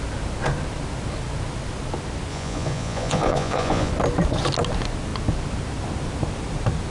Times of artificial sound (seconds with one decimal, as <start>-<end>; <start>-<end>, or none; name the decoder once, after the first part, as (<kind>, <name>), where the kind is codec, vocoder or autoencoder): 2.3-3.9 (vocoder, Vocos)